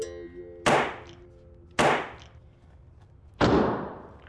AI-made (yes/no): no